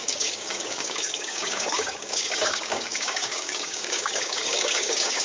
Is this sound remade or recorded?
remade